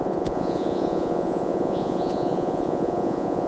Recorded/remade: remade